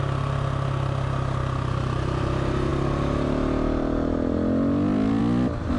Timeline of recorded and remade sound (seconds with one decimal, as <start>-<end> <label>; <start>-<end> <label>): 0.0-5.8 recorded

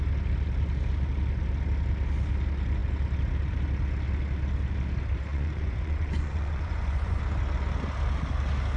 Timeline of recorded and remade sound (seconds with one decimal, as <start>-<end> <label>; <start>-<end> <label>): 0.0-5.3 recorded; 5.3-7.2 remade; 7.2-8.8 recorded